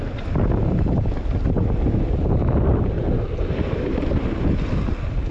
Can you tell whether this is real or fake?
real